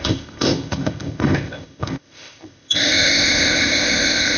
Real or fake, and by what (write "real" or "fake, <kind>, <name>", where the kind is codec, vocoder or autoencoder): fake, codec, ZipCodec